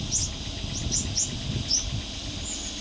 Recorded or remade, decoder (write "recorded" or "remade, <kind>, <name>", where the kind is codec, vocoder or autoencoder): recorded